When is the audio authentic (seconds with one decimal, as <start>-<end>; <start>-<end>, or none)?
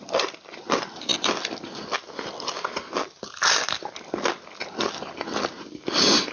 0.0-6.3